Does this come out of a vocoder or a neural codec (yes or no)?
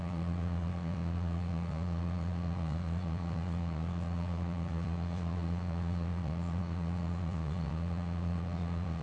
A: yes